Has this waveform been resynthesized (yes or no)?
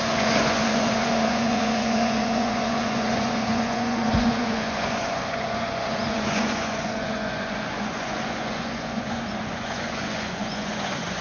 yes